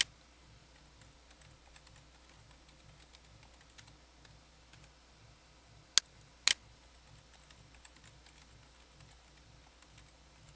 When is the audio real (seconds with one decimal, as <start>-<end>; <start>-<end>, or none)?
0.0-10.6